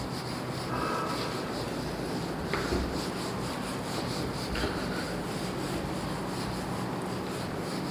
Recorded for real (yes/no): yes